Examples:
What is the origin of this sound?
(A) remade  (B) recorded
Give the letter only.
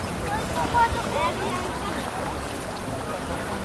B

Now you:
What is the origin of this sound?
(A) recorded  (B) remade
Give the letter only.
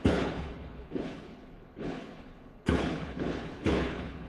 B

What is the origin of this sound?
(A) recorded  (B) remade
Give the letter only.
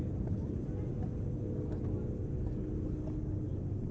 A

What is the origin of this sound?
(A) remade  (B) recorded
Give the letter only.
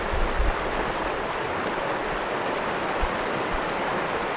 B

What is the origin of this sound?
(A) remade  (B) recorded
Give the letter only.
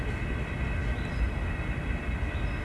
B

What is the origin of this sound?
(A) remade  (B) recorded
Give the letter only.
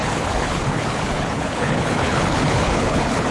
A